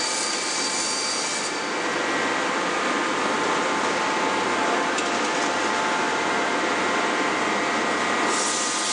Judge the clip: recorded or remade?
recorded